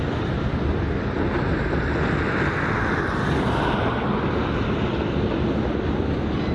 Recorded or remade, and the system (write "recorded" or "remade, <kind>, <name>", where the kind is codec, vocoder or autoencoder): recorded